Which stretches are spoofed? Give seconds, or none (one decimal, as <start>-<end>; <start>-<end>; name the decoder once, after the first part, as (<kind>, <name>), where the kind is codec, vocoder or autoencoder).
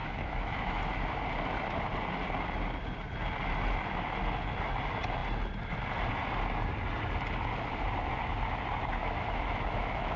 0.0-0.8 (autoencoder, DAC-VAE); 9.0-10.2